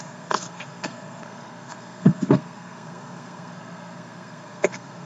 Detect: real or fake fake